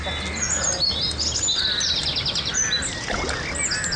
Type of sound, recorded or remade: recorded